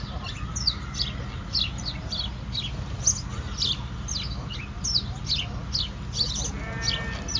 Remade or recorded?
recorded